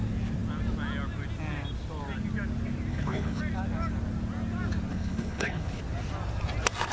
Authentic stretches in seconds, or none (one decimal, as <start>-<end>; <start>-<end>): 0.0-2.9; 3.4-4.9; 5.8-6.9